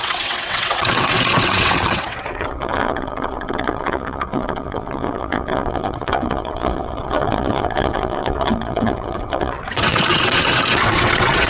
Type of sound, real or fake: fake